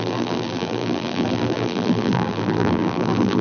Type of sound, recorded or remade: remade